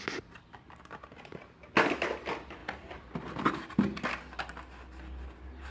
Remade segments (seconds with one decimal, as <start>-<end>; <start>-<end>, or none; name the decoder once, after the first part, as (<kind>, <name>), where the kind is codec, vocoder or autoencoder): none